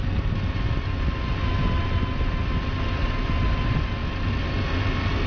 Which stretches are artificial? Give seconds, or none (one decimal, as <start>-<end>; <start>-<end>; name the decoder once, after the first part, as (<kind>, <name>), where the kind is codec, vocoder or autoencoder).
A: none